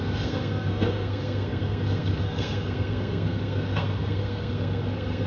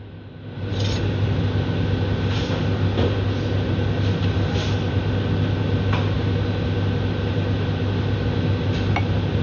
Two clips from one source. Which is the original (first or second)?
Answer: second